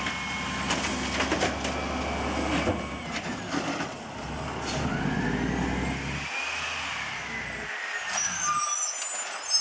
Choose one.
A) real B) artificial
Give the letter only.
A